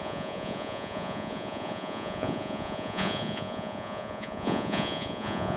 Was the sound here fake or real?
fake